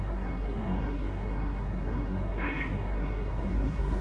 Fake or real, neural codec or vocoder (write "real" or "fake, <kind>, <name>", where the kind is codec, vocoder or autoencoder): fake, codec, SNAC